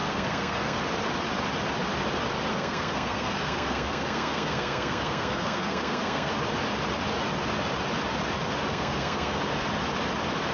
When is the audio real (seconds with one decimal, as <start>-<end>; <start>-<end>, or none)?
0.8-2.5; 6.3-8.7; 9.4-10.5